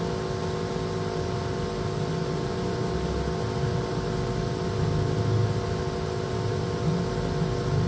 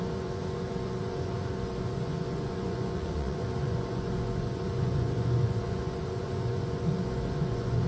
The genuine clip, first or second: first